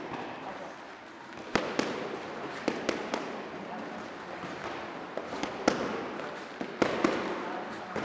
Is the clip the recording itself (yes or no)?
yes